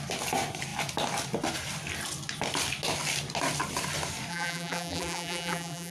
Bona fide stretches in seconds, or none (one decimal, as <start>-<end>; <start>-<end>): 0.0-4.3